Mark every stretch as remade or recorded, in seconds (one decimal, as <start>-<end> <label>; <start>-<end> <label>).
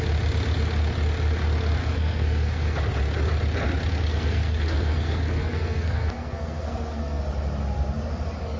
0.0-1.8 recorded; 1.8-2.8 remade; 2.8-4.1 recorded; 4.1-7.2 remade; 7.2-8.6 recorded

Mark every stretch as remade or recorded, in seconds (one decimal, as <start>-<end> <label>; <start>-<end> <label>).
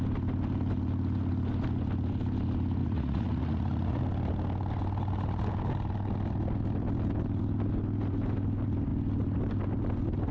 0.0-2.8 recorded; 2.8-4.0 remade; 4.0-10.3 recorded